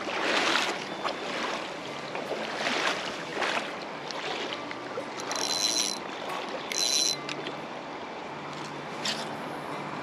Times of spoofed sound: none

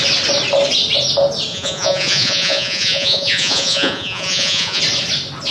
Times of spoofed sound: 1.5-4.8 (vocoder, Vocos)

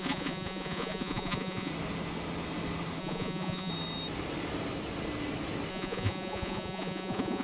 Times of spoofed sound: 0.0-1.7 (vocoder, Vocos); 3.0-3.7; 5.7-7.4

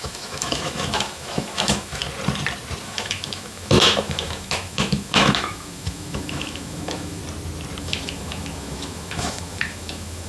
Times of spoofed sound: 0.0-2.0 (autoencoder, DAC-VAE); 2.8-7.2; 7.8-10.3

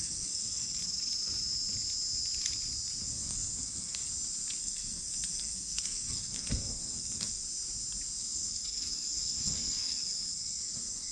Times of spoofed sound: 0.0-0.8 (codec, SNAC); 3.0-4.1; 4.6-7.4; 8.2-11.1

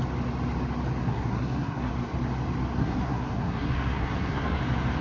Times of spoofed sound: 1.0-1.9 (codec, SNAC); 2.8-4.6

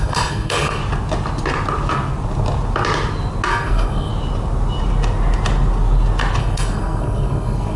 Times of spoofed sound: 0.0-0.8 (codec, SNAC); 3.5-4.1; 6.4-7.8

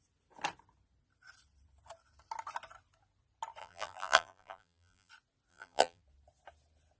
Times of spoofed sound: 3.6-5.1 (vocoder, BigVGAN v2); 5.5-6.0